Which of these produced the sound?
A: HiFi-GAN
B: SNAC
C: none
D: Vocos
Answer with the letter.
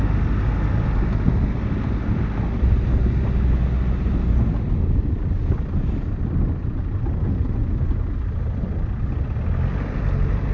C